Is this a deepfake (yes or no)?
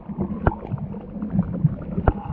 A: yes